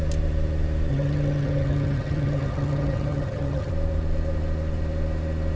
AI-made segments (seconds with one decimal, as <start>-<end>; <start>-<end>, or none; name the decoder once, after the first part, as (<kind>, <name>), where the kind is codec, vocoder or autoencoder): 0.9-3.7 (vocoder, HiFi-GAN)